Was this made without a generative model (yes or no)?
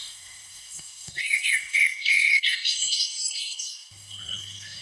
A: no